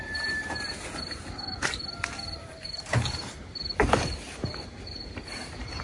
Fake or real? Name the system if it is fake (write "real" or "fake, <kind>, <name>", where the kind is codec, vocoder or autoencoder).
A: fake, vocoder, BigVGAN v2